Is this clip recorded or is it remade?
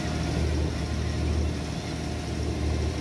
recorded